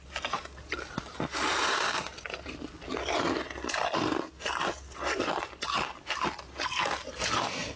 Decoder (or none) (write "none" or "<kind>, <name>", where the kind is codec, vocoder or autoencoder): none